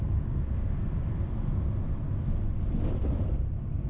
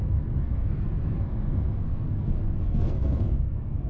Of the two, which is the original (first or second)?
first